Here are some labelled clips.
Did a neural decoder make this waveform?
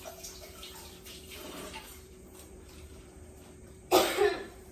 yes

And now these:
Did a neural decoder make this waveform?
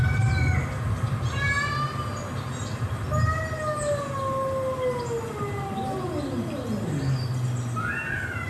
no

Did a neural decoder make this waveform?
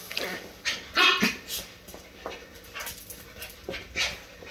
yes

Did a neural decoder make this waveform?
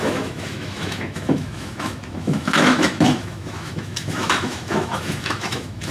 yes